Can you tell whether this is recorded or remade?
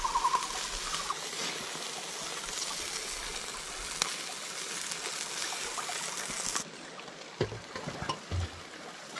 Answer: recorded